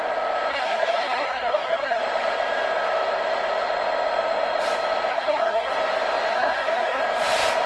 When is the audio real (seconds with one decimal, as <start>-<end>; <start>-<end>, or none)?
0.0-0.5; 2.0-5.1; 5.7-6.3; 7.0-7.7